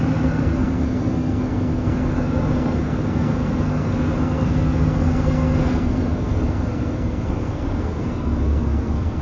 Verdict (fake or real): fake